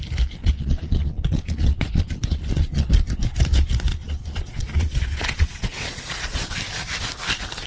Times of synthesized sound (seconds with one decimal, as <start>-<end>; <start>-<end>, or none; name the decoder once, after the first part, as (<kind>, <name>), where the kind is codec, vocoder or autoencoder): 0.4-2.9 (vocoder, Vocos); 3.9-6.5